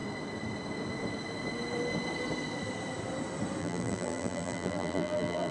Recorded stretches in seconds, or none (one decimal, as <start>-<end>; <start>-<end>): 0.0-3.6